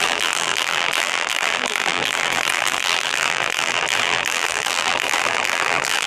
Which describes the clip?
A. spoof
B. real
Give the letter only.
A